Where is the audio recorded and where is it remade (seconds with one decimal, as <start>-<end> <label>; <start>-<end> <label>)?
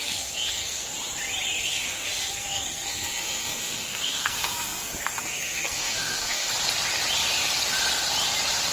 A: 0.0-0.9 remade; 0.9-1.6 recorded; 1.6-6.5 remade; 6.5-8.7 recorded